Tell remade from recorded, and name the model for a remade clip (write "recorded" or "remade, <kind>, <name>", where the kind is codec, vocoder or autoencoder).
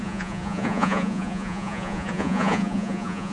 remade, vocoder, Vocos